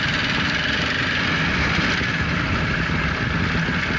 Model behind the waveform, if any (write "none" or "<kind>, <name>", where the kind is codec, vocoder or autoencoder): none